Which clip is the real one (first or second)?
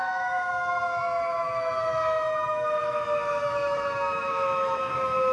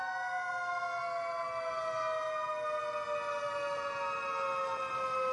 second